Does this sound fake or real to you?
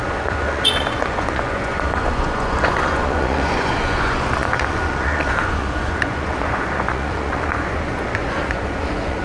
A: fake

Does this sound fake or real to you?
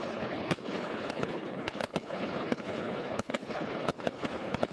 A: fake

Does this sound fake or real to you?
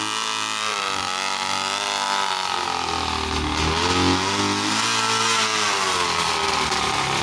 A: real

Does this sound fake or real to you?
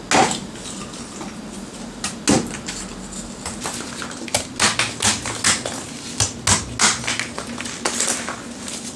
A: real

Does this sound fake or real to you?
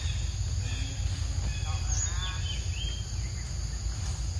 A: real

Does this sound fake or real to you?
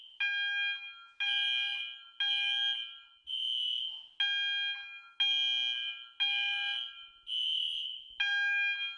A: real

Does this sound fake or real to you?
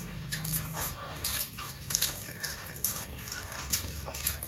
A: fake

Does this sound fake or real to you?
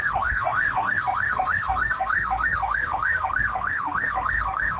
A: fake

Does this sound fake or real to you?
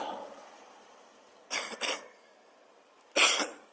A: real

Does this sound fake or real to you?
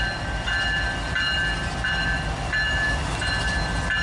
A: real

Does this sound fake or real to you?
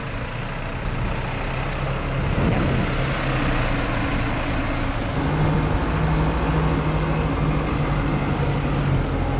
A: real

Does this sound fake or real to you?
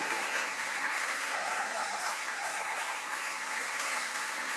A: fake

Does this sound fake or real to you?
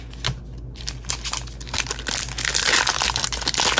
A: real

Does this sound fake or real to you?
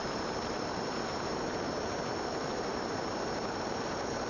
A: fake